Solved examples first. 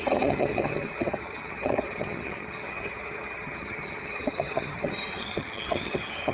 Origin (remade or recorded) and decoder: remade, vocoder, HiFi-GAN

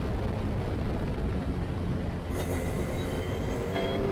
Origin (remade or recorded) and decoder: recorded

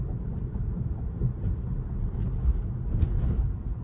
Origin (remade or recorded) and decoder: recorded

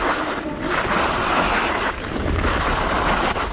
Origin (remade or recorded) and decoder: recorded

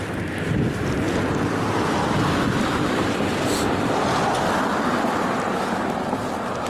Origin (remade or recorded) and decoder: remade, vocoder, BigVGAN v2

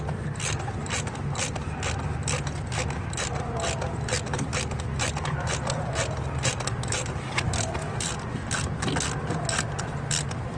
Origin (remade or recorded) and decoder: recorded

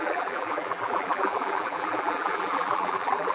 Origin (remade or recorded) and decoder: remade, vocoder, BigVGAN v2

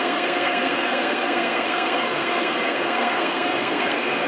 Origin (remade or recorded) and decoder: remade, codec, SNAC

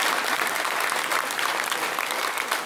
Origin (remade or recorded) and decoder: remade, vocoder, BigVGAN v2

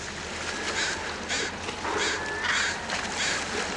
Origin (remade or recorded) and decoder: recorded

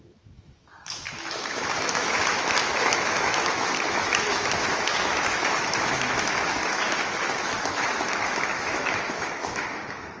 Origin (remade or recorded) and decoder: remade, autoencoder, DAC-VAE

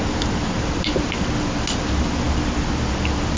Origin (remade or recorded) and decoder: recorded